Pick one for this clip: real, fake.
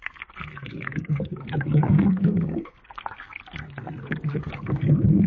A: fake